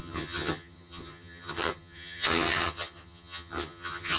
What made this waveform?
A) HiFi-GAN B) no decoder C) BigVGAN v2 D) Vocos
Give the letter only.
A